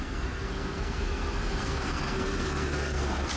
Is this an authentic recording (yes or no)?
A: no